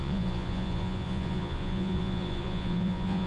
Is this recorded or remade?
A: remade